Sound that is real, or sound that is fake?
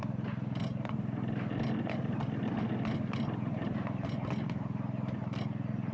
real